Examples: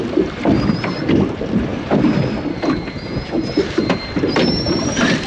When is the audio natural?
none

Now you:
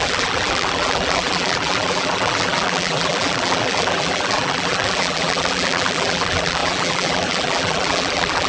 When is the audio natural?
none

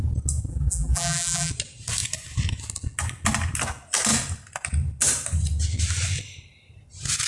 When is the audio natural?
0.0-0.5; 1.5-7.3

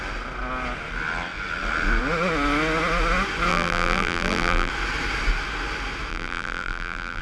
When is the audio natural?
0.0-3.5; 4.7-6.1

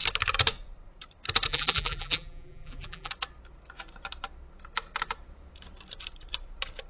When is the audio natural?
0.0-1.5; 3.1-6.9